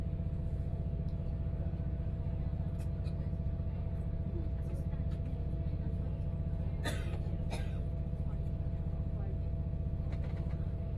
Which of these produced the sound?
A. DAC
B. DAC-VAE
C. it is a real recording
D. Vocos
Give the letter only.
C